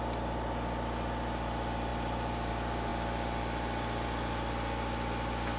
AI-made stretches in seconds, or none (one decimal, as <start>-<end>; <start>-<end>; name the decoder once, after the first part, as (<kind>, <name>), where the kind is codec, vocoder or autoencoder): none